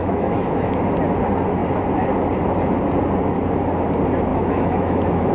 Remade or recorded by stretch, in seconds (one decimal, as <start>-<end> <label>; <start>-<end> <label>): 0.0-0.8 remade; 0.8-4.3 recorded; 4.3-5.3 remade

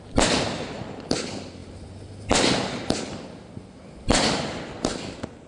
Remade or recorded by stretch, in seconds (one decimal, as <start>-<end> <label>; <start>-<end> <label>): 0.0-5.5 recorded

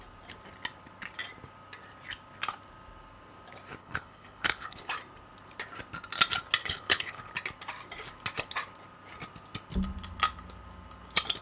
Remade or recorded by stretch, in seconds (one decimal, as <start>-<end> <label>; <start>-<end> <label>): 0.0-3.8 recorded; 3.8-4.8 remade; 4.8-6.6 recorded; 6.6-7.3 remade; 7.3-11.4 recorded

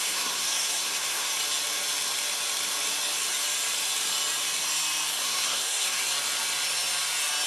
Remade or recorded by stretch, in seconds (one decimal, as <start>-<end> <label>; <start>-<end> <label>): 0.0-1.3 remade; 1.3-5.1 recorded; 5.1-6.0 remade; 6.0-7.5 recorded

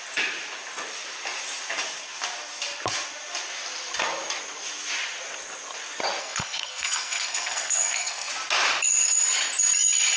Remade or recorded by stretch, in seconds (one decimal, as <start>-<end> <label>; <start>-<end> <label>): 0.0-6.2 recorded; 6.2-8.3 remade; 8.3-10.2 recorded